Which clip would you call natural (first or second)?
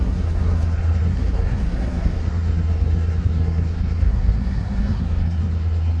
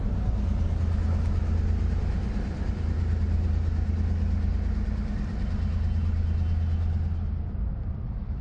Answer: second